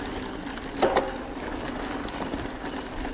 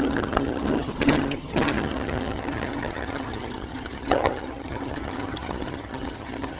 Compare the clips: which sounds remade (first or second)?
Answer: second